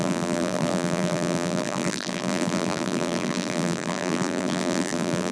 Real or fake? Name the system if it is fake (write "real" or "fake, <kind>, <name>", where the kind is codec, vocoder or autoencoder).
fake, vocoder, BigVGAN v2